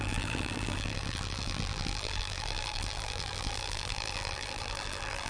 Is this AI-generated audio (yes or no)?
yes